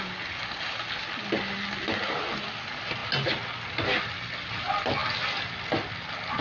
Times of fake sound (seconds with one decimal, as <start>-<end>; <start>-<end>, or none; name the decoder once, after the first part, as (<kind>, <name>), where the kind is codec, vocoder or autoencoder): none